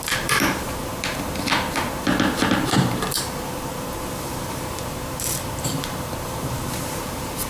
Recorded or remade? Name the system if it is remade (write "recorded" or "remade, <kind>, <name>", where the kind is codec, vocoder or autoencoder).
remade, vocoder, BigVGAN v2